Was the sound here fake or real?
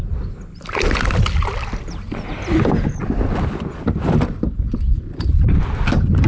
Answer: real